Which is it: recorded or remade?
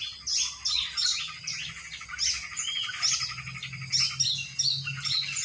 recorded